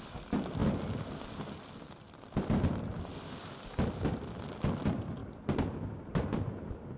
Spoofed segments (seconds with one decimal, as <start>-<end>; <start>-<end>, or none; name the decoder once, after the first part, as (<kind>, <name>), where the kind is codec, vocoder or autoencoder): 0.0-5.2 (vocoder, BigVGAN v2)